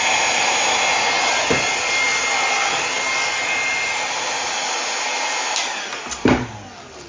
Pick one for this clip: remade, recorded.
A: recorded